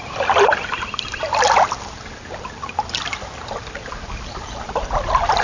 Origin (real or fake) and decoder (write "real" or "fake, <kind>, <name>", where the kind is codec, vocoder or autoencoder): real